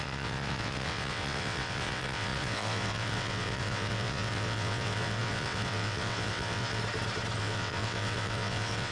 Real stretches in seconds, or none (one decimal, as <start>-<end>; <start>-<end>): 6.8-7.4